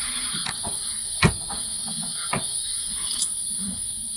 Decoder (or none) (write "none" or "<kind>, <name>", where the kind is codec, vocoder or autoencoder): none